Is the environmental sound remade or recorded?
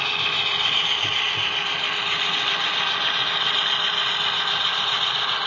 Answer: recorded